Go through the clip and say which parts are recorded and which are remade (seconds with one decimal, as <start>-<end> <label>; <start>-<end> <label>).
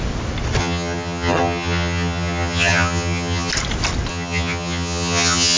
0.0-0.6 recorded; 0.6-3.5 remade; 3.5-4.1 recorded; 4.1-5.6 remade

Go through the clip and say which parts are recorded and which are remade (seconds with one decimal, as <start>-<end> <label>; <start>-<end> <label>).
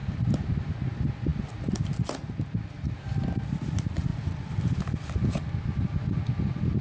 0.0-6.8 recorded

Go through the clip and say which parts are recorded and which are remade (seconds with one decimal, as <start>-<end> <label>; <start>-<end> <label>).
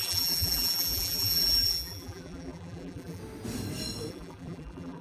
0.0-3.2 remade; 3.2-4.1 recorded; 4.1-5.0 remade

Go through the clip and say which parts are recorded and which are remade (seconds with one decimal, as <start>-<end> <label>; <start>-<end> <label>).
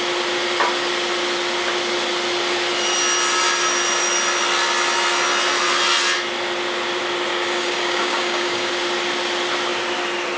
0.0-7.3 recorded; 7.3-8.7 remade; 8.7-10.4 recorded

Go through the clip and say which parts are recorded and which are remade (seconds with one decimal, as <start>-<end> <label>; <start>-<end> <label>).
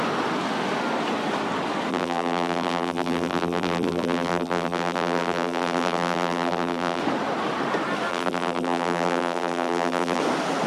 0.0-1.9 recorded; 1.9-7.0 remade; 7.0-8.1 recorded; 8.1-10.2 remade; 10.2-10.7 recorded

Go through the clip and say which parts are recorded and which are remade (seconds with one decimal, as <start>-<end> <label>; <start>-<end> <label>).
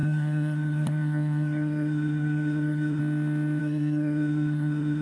0.0-3.0 remade; 3.0-3.6 recorded; 3.6-5.0 remade